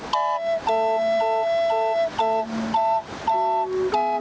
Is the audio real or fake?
real